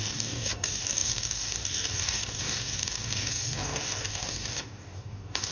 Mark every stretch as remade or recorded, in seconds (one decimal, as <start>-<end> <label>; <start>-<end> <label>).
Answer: 0.0-5.5 remade